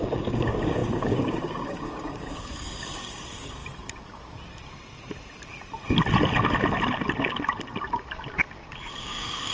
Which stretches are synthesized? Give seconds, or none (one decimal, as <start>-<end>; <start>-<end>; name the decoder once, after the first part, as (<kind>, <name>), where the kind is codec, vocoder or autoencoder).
0.0-3.6 (codec, DAC); 8.9-9.5